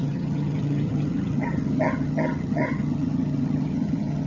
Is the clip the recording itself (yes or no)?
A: no